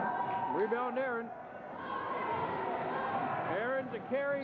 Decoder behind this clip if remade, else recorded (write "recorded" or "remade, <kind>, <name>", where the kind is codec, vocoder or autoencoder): recorded